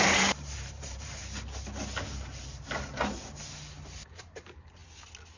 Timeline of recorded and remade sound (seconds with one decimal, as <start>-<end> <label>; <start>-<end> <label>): 0.0-1.2 remade; 1.2-4.2 recorded; 4.2-4.8 remade; 4.8-5.4 recorded